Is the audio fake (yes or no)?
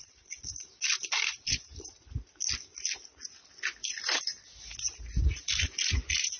no